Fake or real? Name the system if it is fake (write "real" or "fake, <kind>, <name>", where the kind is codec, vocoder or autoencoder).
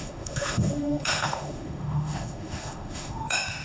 fake, autoencoder, DAC-VAE